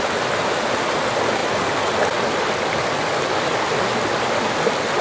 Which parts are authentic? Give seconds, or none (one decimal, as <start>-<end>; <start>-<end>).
0.0-5.0